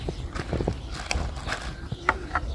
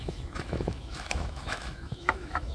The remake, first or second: second